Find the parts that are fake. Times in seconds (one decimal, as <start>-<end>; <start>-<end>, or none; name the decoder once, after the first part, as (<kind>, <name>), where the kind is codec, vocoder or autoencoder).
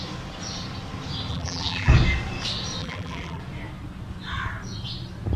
1.3-1.9 (vocoder, BigVGAN v2); 2.8-3.4